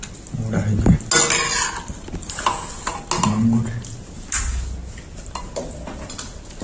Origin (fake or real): real